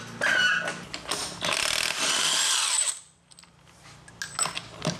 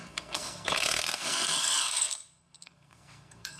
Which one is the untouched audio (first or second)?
first